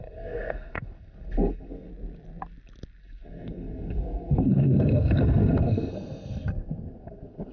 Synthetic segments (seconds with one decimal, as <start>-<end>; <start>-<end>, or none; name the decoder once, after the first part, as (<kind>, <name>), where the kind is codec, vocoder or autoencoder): 0.0-1.9 (codec, SNAC); 3.0-7.5